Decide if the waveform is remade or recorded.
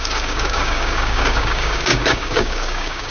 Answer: remade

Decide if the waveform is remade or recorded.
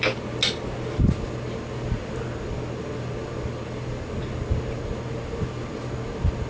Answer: recorded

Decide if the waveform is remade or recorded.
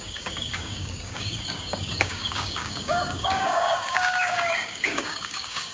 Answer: remade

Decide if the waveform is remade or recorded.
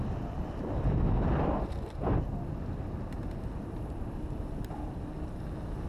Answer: recorded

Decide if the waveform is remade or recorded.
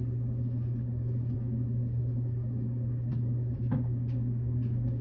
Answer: remade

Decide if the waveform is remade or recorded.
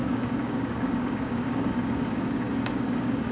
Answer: remade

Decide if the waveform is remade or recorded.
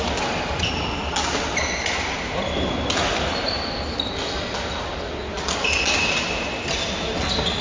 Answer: recorded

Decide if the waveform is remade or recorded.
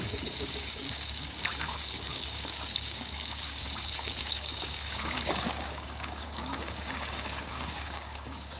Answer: remade